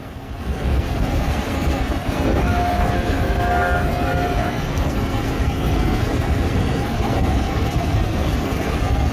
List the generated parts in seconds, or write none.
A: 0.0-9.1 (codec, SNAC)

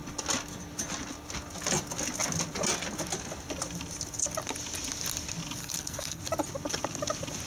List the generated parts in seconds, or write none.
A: 5.6-6.2 (codec, SNAC)

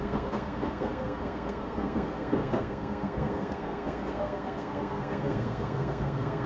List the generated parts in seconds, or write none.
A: 0.0-6.5 (codec, SNAC)